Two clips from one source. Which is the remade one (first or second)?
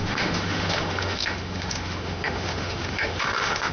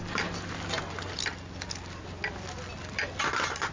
first